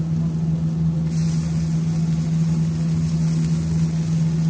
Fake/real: real